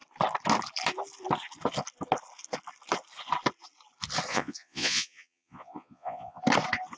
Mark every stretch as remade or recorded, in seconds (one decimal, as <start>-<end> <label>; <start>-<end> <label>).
0.0-4.3 recorded; 4.3-6.4 remade; 6.4-7.0 recorded

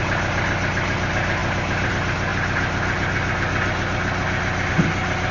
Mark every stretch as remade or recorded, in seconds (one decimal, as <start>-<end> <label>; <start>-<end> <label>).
0.0-5.3 recorded

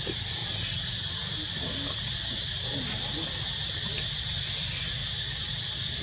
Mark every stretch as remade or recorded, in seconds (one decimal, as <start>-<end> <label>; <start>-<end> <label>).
0.0-6.0 recorded

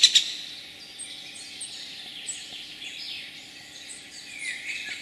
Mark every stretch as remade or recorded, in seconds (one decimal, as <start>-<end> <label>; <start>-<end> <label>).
0.0-5.0 recorded

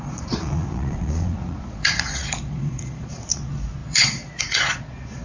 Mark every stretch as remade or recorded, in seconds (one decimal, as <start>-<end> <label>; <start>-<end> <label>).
0.0-5.2 remade

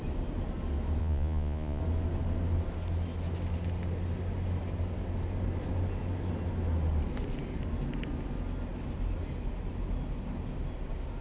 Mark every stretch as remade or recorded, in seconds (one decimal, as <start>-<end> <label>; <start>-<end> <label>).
0.0-1.0 recorded; 1.0-1.8 remade; 1.8-11.2 recorded

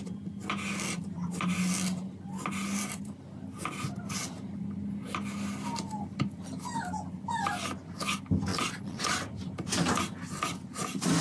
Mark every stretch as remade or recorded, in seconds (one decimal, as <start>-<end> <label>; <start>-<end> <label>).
0.0-8.5 recorded; 8.5-9.0 remade; 9.0-11.2 recorded